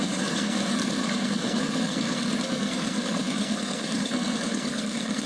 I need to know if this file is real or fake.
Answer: fake